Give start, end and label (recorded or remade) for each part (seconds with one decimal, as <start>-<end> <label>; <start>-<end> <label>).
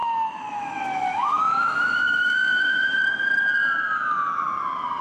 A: 0.0-3.0 remade; 3.0-5.0 recorded